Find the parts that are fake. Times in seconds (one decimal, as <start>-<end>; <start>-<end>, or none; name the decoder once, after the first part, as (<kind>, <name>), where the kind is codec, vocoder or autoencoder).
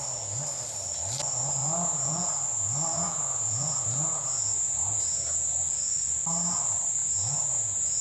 1.6-2.3 (vocoder, Vocos); 2.9-5.5; 7.0-8.0